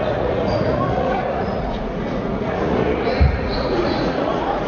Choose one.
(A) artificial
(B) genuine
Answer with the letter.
A